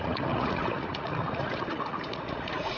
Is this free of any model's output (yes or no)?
no